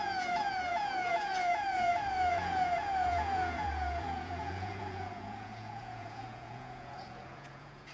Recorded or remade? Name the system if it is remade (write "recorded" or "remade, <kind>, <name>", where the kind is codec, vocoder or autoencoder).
remade, vocoder, Vocos